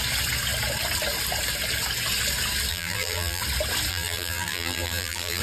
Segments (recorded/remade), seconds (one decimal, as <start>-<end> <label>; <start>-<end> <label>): 0.0-2.7 recorded; 2.7-3.4 remade; 3.4-3.9 recorded; 3.9-5.4 remade